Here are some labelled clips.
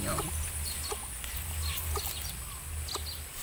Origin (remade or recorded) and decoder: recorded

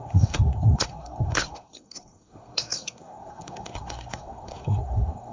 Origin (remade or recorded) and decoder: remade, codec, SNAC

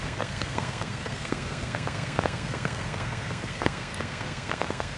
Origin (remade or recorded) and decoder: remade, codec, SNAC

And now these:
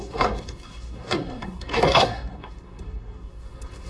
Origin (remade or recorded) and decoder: remade, codec, SNAC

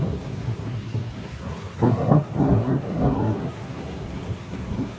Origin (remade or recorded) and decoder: remade, codec, SNAC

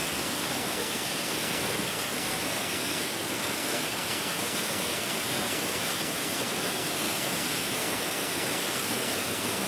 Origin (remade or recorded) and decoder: remade, codec, SNAC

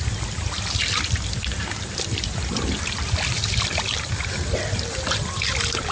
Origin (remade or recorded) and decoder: recorded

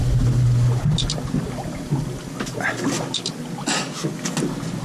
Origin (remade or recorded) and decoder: recorded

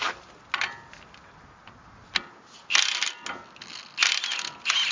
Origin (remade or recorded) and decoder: recorded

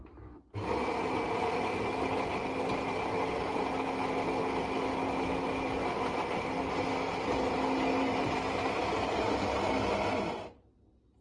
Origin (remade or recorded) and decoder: recorded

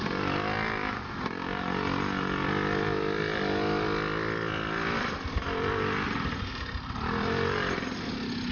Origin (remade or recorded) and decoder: recorded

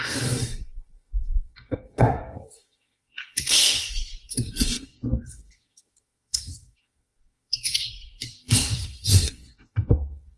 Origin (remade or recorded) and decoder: remade, codec, SNAC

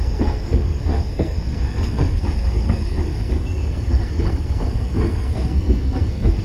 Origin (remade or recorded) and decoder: remade, codec, SNAC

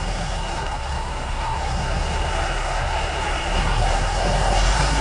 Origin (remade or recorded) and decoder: remade, codec, SNAC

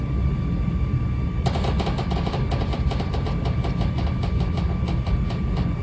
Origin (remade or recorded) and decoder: recorded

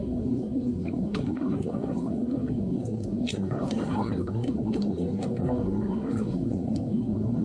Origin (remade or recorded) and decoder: remade, codec, SNAC